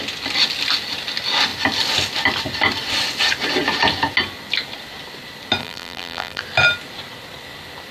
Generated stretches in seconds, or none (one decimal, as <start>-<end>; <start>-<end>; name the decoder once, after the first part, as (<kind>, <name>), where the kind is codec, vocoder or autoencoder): 5.6-6.4 (vocoder, BigVGAN v2)